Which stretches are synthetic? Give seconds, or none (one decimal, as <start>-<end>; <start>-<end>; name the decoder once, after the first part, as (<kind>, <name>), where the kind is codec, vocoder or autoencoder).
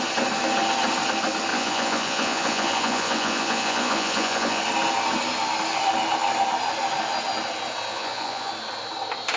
1.5-4.6 (vocoder, Vocos); 7.9-8.5